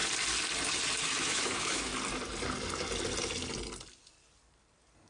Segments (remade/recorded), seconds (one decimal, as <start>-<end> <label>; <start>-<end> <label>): 0.0-1.2 recorded; 1.2-1.9 remade; 1.9-5.1 recorded